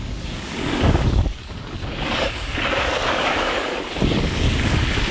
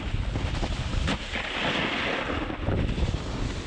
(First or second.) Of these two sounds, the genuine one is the second